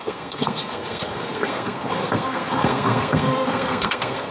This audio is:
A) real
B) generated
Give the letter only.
B